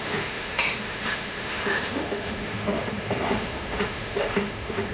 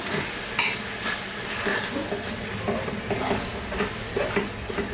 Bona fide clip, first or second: second